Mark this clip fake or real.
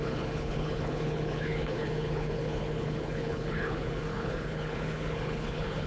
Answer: fake